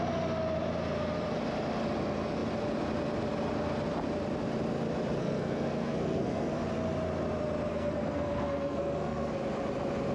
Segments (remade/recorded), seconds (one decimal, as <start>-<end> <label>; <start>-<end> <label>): 0.0-5.2 recorded; 5.2-6.5 remade; 6.5-7.7 recorded; 7.7-9.3 remade; 9.3-10.1 recorded